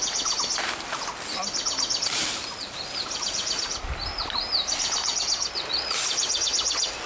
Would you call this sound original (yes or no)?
yes